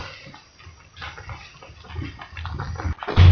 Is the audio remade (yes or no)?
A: no